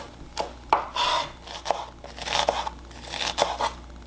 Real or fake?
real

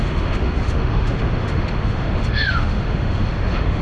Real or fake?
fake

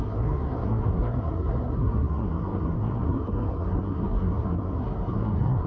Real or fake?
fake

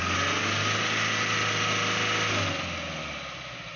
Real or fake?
real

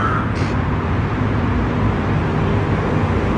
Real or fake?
real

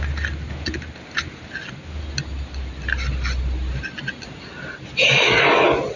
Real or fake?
real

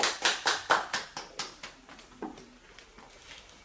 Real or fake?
fake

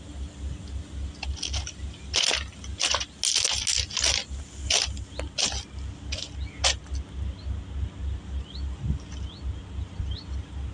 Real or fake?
real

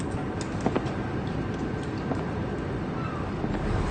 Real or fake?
real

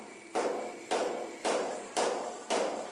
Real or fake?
fake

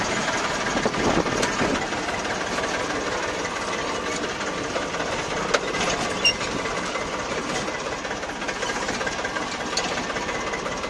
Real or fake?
real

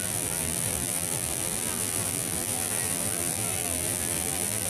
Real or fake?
fake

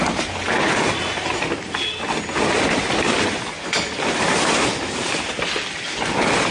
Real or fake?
real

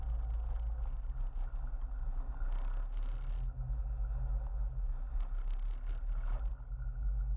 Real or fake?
real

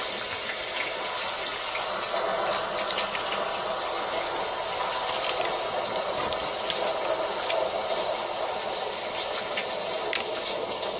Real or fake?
real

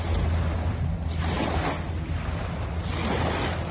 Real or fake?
real